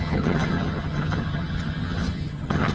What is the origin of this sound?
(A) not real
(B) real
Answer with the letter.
A